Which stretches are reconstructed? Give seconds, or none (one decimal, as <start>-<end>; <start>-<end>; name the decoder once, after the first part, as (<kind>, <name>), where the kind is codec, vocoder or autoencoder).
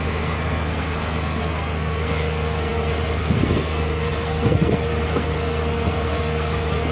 0.0-6.9 (codec, SNAC)